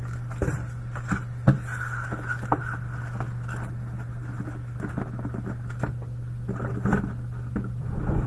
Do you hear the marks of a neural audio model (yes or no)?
no